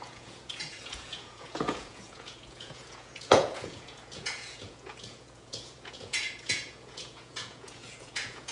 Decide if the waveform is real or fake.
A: fake